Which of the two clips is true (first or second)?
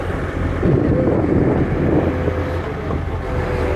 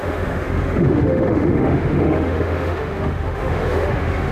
first